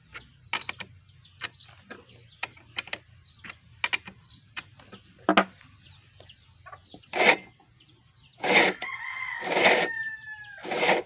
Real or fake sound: real